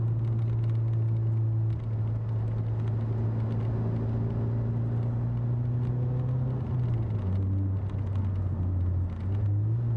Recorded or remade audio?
recorded